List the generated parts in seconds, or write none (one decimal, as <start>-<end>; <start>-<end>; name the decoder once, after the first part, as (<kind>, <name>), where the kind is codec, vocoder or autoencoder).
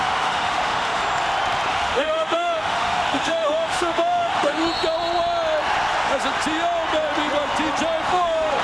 0.0-1.0 (autoencoder, DAC-VAE); 1.7-4.6; 8.1-8.6